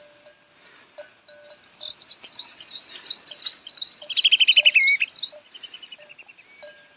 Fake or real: real